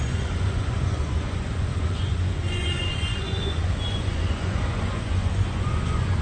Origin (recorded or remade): remade